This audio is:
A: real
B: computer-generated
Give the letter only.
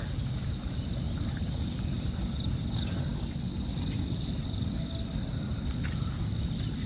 A